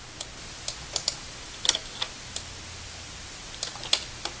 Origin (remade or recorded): recorded